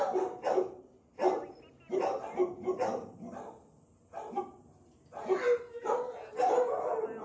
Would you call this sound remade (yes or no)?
no